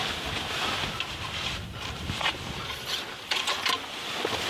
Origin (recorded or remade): recorded